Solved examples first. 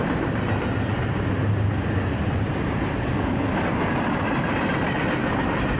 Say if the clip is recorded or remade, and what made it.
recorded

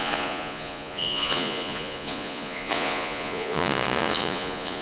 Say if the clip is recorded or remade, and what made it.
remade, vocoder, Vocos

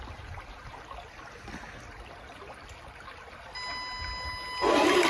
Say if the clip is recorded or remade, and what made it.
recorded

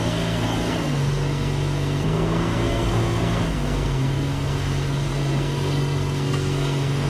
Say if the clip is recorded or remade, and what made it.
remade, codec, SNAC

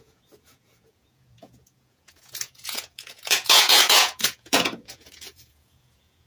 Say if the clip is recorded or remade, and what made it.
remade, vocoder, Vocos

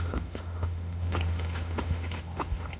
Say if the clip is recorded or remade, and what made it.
remade, autoencoder, DAC-VAE